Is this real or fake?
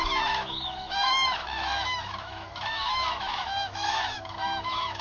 fake